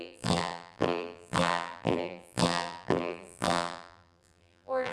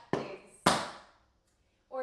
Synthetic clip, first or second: first